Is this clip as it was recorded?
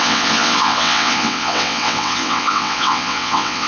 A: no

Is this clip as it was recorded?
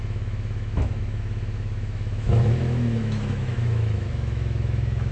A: no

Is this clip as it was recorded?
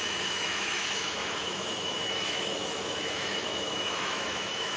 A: no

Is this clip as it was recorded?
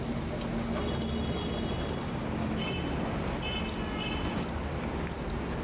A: yes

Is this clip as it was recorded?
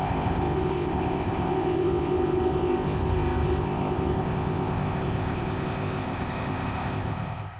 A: no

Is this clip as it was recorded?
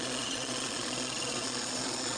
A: no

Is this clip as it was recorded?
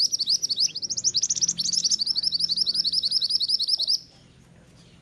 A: yes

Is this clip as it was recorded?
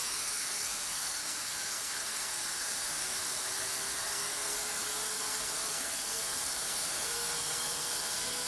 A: no